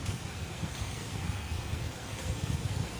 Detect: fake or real fake